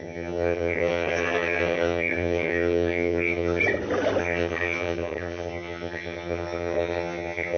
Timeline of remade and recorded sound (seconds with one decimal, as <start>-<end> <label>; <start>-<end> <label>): 0.0-3.6 remade; 3.6-4.2 recorded; 4.2-7.6 remade